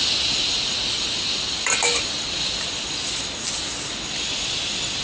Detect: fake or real real